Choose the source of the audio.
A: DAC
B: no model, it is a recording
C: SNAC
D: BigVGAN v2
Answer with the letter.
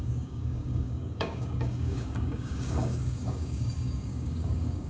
A